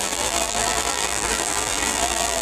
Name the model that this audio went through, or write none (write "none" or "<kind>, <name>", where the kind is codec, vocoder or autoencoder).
vocoder, BigVGAN v2